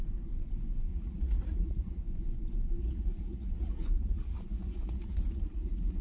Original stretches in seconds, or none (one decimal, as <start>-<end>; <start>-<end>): 0.0-0.9; 2.0-2.8